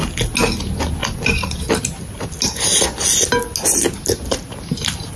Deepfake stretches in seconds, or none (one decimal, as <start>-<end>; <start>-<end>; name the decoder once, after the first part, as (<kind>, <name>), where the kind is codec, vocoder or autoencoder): 1.0-1.7 (vocoder, BigVGAN v2)